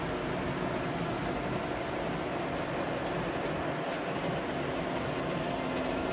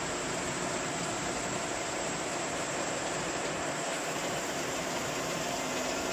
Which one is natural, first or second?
first